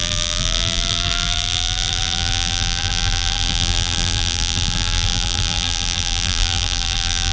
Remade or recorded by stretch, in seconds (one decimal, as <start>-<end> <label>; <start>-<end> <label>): 0.0-7.3 remade